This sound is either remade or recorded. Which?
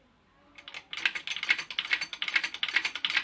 recorded